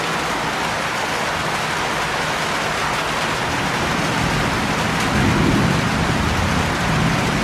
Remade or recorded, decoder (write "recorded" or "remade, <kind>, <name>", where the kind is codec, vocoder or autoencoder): recorded